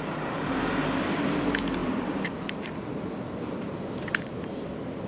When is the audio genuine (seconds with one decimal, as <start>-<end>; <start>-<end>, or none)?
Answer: 0.0-1.8